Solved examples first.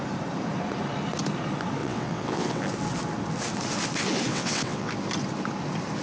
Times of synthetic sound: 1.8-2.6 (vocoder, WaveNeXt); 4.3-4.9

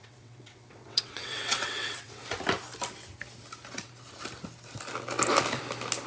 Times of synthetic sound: 0.0-2.2 (vocoder, WaveNeXt)

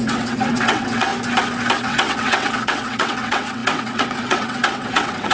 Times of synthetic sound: 0.0-1.1 (vocoder, WaveNeXt); 1.8-5.3

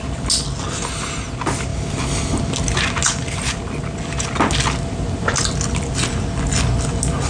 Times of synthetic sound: none

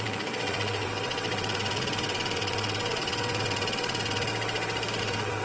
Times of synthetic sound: 0.0-4.3 (vocoder, WaveNeXt); 5.0-5.4

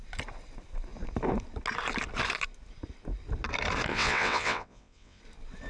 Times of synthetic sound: 3.9-5.2 (vocoder, WaveNeXt)

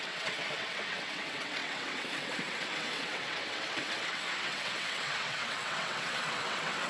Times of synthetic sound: 0.0-6.9 (vocoder, WaveNeXt)

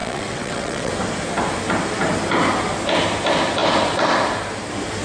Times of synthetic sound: 0.0-0.9 (vocoder, WaveNeXt)